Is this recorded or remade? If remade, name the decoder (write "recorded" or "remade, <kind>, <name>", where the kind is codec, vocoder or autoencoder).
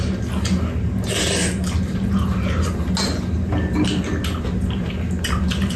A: recorded